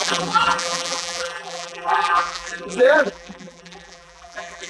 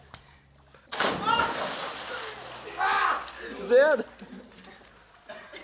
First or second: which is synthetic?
first